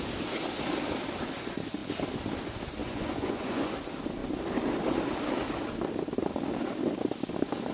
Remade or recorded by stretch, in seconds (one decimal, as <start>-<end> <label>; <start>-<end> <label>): 0.0-2.8 recorded; 2.8-3.7 remade; 3.7-7.7 recorded

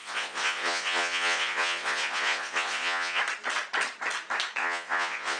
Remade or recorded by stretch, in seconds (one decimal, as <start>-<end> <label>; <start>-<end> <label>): 0.0-3.2 remade; 3.2-4.6 recorded; 4.6-5.4 remade

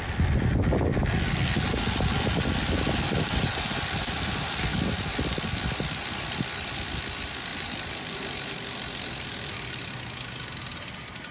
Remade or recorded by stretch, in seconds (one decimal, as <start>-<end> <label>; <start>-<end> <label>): 0.0-11.3 recorded

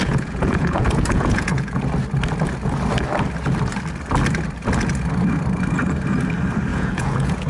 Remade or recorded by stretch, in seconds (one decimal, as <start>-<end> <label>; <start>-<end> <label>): 0.0-1.8 remade; 1.8-6.7 recorded; 6.7-7.5 remade

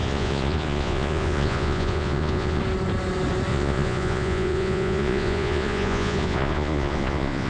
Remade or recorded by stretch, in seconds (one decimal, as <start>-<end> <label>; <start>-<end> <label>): 0.0-2.6 remade; 2.6-3.5 recorded; 3.5-7.5 remade

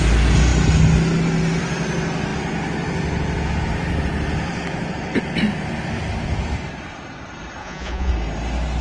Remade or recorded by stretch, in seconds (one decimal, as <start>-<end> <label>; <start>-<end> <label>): 0.0-7.6 recorded; 7.6-8.1 remade; 8.1-8.8 recorded

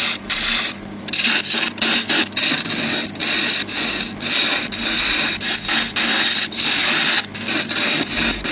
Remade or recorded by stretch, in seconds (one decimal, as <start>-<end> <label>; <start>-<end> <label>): 0.0-8.5 recorded